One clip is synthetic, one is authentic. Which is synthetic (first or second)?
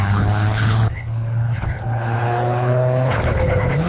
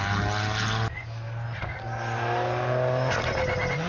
first